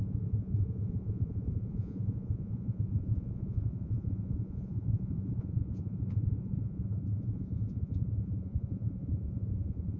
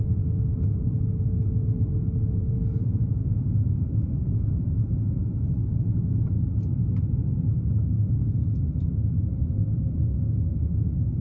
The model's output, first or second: first